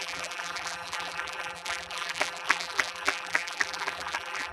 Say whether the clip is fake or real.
fake